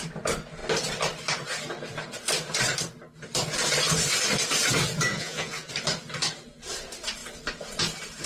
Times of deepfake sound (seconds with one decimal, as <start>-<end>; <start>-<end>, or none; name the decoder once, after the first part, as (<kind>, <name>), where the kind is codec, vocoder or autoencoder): 5.1-5.7 (vocoder, Vocos)